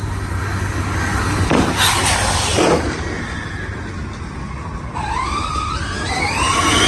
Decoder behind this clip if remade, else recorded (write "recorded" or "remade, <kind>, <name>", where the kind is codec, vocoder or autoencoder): recorded